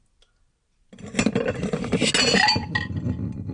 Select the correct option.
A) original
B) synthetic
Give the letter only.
A